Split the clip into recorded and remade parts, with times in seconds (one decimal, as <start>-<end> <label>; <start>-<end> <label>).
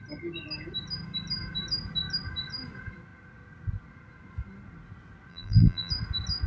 0.0-5.3 recorded; 5.3-5.9 remade; 5.9-6.5 recorded